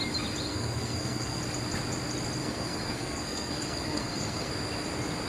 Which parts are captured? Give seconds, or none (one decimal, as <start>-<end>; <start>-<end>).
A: 0.0-0.5; 1.4-2.4; 4.5-5.3